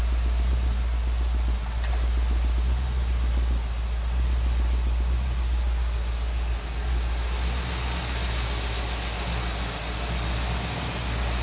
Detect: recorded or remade recorded